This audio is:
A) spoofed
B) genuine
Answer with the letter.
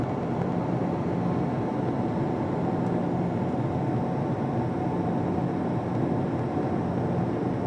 B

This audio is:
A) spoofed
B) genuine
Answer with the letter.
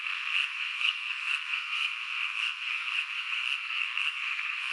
A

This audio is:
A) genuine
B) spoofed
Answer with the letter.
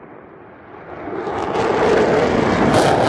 A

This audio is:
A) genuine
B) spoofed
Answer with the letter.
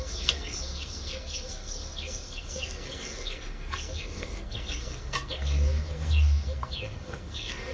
B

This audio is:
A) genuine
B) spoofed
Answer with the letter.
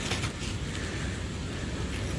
A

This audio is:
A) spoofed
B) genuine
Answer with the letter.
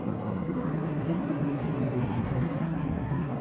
A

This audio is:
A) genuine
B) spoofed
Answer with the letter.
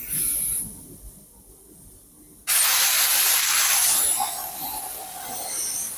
A